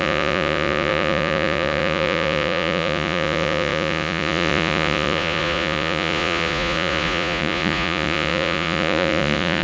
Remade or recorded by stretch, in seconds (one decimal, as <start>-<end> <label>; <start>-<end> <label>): 0.0-9.6 remade